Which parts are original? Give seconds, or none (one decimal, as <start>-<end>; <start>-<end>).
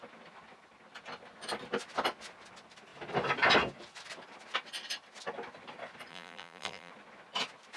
0.0-6.1; 6.9-7.8